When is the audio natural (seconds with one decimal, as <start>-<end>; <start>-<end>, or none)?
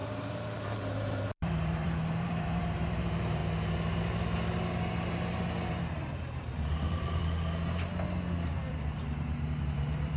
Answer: 3.4-5.7; 7.2-8.5